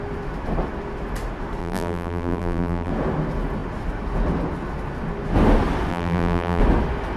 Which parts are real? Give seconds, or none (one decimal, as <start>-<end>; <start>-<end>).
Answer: 0.0-1.6; 2.9-5.9; 6.6-7.2